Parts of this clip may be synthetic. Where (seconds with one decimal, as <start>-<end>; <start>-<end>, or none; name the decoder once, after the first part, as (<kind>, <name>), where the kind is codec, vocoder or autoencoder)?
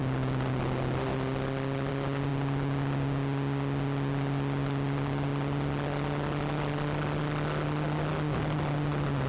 none